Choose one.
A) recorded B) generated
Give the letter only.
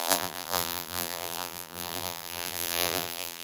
B